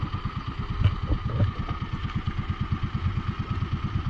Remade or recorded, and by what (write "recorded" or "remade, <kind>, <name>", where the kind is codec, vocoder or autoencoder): recorded